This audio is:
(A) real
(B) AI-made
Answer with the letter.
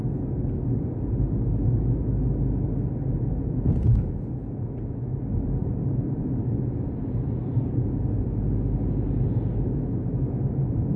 A